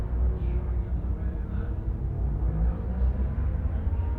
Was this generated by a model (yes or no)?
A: no